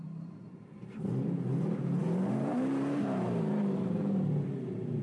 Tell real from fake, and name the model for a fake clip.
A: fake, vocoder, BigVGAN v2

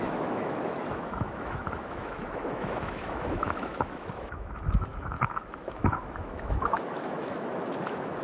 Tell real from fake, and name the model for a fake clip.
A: fake, autoencoder, DAC-VAE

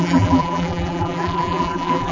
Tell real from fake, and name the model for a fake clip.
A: fake, vocoder, BigVGAN v2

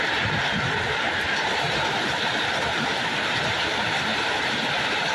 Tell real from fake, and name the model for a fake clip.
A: fake, vocoder, BigVGAN v2